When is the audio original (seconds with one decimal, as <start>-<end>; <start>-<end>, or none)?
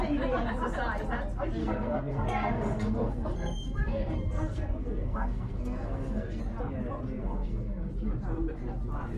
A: 0.0-1.6; 6.4-7.2; 7.9-9.2